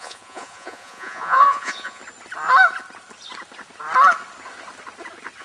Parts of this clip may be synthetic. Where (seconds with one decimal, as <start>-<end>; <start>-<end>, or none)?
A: 0.0-2.0